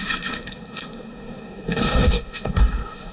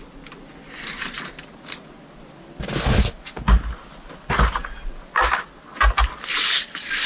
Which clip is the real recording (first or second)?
second